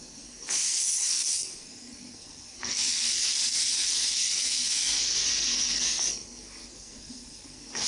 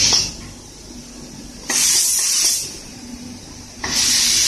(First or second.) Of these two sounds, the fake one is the first